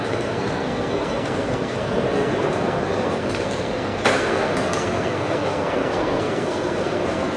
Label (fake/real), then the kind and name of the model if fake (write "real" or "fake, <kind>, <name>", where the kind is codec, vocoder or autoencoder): fake, codec, SNAC